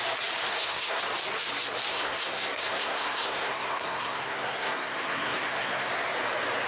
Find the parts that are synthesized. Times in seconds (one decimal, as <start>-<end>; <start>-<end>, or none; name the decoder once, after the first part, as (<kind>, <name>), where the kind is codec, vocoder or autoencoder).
0.5-1.0 (codec, SNAC); 1.9-5.9